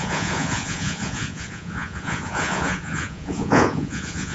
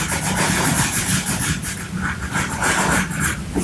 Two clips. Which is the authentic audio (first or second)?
second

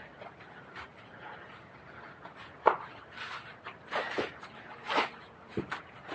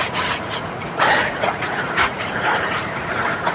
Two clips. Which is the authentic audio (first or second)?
first